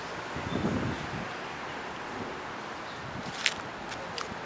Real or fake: fake